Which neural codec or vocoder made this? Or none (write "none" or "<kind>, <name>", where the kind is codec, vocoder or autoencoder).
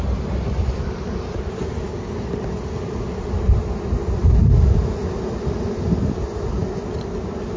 none